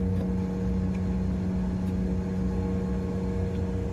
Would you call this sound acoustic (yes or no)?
yes